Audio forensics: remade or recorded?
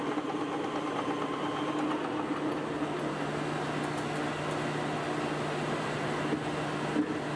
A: recorded